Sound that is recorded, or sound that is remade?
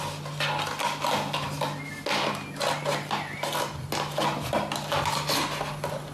recorded